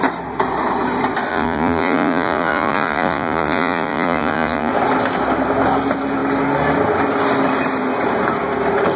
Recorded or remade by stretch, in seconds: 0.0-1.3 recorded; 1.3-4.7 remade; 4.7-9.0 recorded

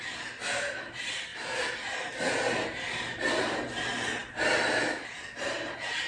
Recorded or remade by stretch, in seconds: 0.0-6.1 recorded

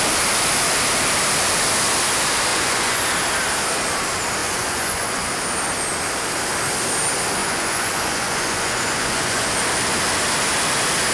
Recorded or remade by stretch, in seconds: 0.0-2.5 recorded; 2.5-3.0 remade; 3.0-4.4 recorded; 4.4-5.3 remade; 5.3-7.4 recorded; 7.4-9.5 remade; 9.5-11.1 recorded

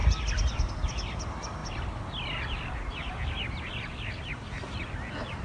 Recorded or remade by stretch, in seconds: 0.0-5.4 recorded